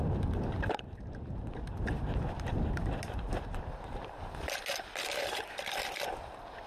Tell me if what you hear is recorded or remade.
recorded